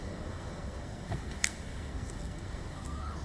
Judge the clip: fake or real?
fake